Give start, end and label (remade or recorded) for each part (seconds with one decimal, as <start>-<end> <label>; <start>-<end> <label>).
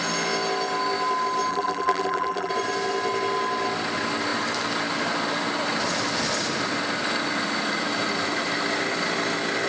0.0-1.5 recorded; 1.5-2.5 remade; 2.5-9.7 recorded